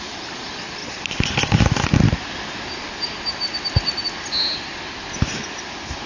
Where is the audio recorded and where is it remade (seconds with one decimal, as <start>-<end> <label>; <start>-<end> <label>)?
0.0-6.1 recorded